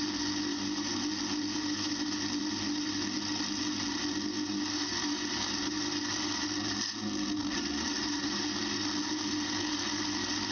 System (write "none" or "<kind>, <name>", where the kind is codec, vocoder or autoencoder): none